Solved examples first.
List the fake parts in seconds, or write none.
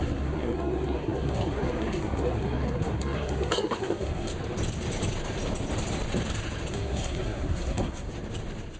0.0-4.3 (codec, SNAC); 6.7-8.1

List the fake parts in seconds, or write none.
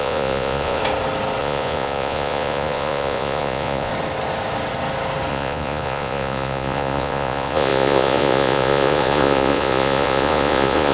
0.0-0.8 (vocoder, Vocos); 1.4-3.9; 5.3-10.9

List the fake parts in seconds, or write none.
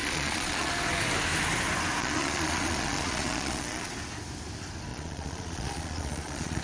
0.0-0.7 (vocoder, Vocos); 2.0-3.9; 4.9-6.6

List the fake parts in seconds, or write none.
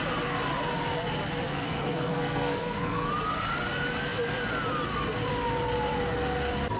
1.5-3.1 (codec, SNAC)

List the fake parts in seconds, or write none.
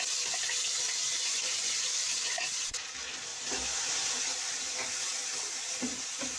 1.2-2.3 (vocoder, Vocos)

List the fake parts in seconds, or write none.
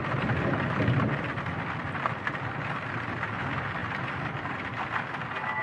none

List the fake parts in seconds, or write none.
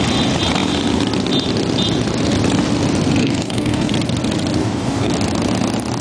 3.2-3.9 (codec, DAC); 4.6-5.1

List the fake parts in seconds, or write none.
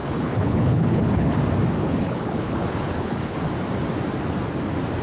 0.0-1.4 (codec, HILCodec); 1.8-3.4